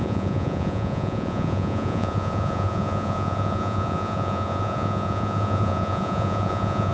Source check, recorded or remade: remade